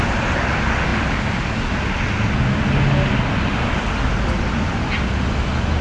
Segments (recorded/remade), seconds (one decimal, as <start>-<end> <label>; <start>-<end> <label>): 0.0-5.8 recorded